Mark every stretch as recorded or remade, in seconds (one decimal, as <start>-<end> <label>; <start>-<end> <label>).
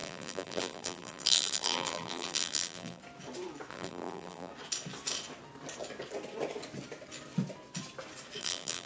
0.0-3.0 remade; 3.0-3.7 recorded; 3.7-4.5 remade; 4.5-8.4 recorded; 8.4-8.9 remade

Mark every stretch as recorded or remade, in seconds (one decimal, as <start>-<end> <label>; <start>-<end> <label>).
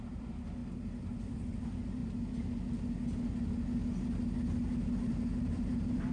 0.0-2.0 remade; 2.0-4.9 recorded; 4.9-6.1 remade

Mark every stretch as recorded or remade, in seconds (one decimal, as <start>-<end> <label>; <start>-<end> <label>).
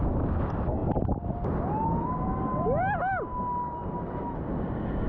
0.0-5.1 recorded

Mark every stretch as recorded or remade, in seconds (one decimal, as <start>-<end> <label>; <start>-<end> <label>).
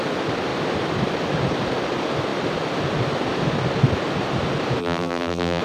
0.0-4.8 recorded; 4.8-5.6 remade